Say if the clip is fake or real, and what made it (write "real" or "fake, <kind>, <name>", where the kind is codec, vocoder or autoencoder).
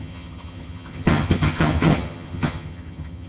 fake, vocoder, HiFi-GAN